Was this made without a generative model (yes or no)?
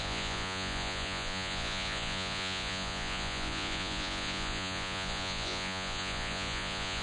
no